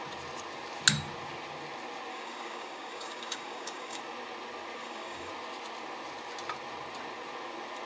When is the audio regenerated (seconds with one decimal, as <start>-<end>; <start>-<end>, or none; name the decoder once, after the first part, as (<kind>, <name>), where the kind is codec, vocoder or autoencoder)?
2.1-4.0 (codec, DAC); 4.8-5.3